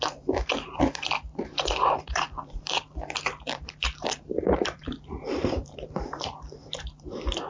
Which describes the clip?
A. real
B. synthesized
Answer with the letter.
B